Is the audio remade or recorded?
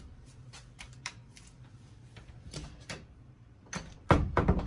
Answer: remade